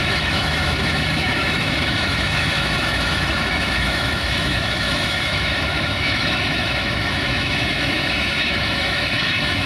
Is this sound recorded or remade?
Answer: remade